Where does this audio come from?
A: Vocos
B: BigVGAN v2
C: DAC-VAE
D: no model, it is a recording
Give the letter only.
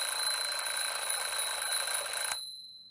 D